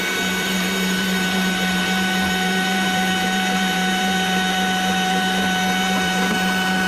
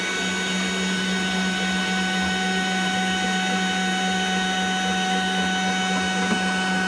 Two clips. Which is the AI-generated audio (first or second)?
first